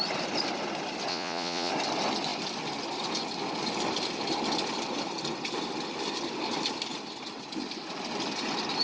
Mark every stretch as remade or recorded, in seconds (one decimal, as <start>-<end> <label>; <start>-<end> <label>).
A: 0.0-1.1 recorded; 1.1-1.7 remade; 1.7-8.8 recorded